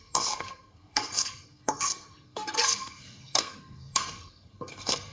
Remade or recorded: remade